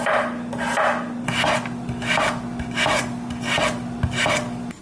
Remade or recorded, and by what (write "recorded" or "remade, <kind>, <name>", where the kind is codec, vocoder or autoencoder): recorded